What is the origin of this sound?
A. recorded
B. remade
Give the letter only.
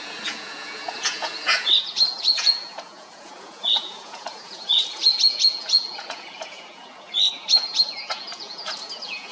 B